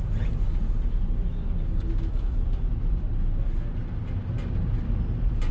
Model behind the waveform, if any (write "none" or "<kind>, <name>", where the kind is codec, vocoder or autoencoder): none